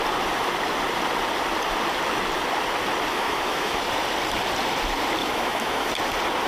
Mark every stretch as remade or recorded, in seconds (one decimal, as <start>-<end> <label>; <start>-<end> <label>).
0.0-3.1 recorded; 3.1-3.8 remade; 3.8-5.2 recorded; 5.2-5.9 remade; 5.9-6.5 recorded

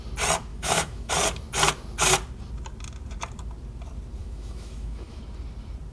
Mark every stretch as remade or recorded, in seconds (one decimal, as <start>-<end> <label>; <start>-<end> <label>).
0.0-0.5 recorded; 0.5-1.1 remade; 1.1-4.2 recorded; 4.2-5.2 remade; 5.2-5.9 recorded

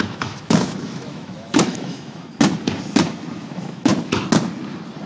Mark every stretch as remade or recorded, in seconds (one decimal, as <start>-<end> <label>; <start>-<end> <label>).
0.0-2.3 remade; 2.3-3.4 recorded; 3.4-3.9 remade; 3.9-5.1 recorded

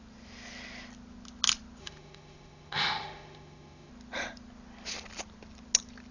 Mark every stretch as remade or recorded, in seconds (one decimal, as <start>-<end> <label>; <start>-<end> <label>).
0.0-1.8 recorded; 1.8-3.9 remade; 3.9-6.1 recorded

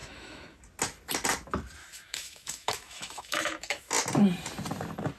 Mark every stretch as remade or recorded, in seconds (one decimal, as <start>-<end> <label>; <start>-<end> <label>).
0.0-0.6 remade; 0.6-1.8 recorded; 1.8-3.9 remade; 3.9-5.2 recorded

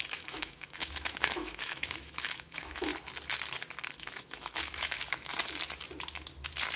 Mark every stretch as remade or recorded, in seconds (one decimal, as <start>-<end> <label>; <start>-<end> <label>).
0.0-2.9 remade; 2.9-4.0 recorded; 4.0-5.3 remade; 5.3-6.8 recorded

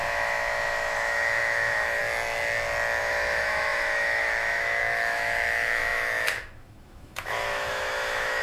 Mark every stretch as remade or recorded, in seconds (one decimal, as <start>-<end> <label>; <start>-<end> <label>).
0.0-2.0 remade; 2.0-3.0 recorded; 3.0-8.4 remade

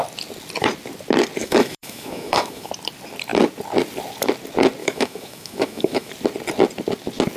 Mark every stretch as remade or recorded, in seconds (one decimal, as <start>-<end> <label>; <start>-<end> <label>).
0.0-1.4 recorded; 1.4-2.7 remade; 2.7-4.8 recorded; 4.8-6.1 remade; 6.1-7.4 recorded